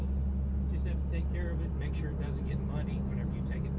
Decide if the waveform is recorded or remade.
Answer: recorded